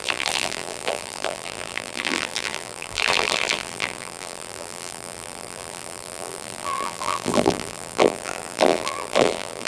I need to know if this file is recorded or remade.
remade